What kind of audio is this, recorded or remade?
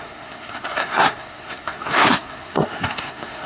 remade